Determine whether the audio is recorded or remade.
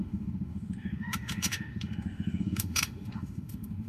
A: remade